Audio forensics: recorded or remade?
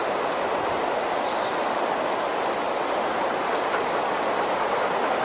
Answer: recorded